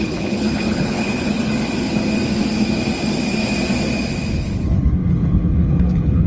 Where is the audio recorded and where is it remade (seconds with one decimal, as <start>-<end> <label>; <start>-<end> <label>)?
0.0-1.5 remade; 1.5-4.3 recorded; 4.3-6.3 remade